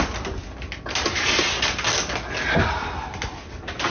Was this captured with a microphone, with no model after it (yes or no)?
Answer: yes